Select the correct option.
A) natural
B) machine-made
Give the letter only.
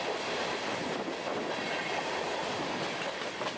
A